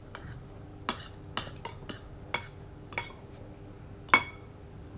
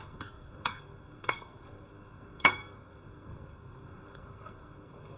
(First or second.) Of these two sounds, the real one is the first